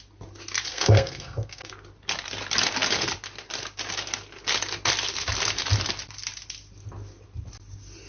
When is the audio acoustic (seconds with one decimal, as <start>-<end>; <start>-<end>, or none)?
0.0-0.7; 1.7-8.1